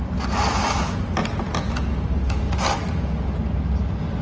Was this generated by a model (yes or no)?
no